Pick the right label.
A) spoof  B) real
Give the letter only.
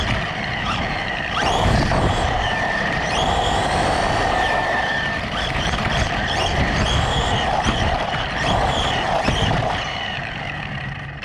A